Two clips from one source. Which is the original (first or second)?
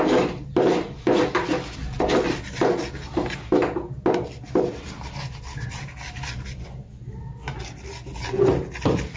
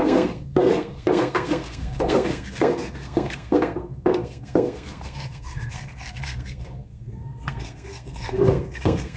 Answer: first